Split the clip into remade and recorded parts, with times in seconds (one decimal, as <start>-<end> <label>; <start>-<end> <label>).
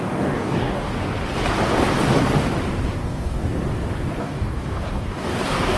0.0-0.9 remade; 0.9-3.0 recorded; 3.0-3.4 remade; 3.4-4.2 recorded; 4.2-5.8 remade